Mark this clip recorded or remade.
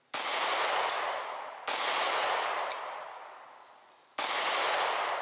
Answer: recorded